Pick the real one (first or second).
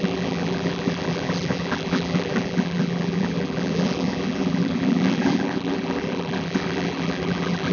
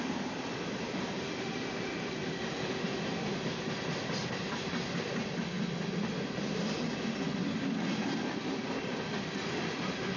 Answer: second